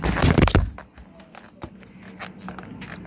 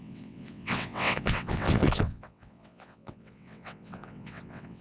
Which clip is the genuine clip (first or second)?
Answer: first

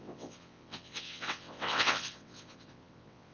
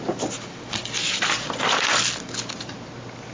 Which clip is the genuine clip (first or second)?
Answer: second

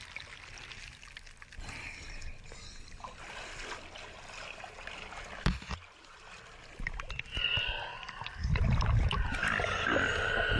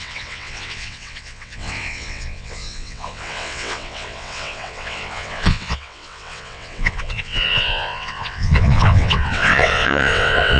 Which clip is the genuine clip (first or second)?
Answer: first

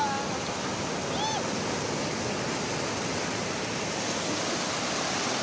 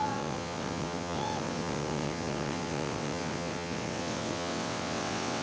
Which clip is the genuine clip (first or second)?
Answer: first